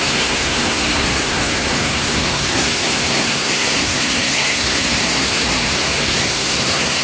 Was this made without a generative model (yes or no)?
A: no